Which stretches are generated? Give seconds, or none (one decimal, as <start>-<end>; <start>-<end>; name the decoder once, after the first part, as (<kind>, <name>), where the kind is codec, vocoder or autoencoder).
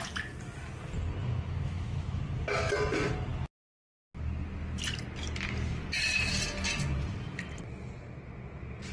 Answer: 1.2-2.2 (autoencoder, DAC-VAE)